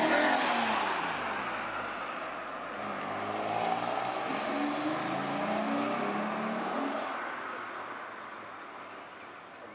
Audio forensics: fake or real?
real